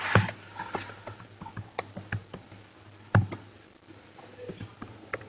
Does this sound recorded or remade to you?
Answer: recorded